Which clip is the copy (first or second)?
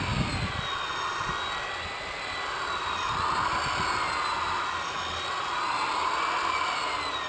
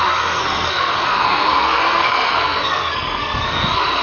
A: second